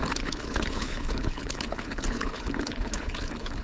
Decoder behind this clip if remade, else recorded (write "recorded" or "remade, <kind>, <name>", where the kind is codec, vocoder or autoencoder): remade, codec, HILCodec